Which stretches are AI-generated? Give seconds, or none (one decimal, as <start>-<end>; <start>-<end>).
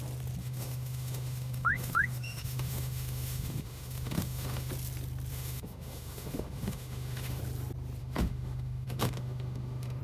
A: 0.4-4.7; 5.3-7.4; 8.0-10.0